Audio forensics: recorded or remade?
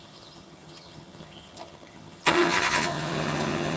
remade